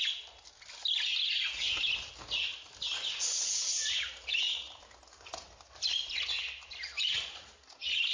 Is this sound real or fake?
real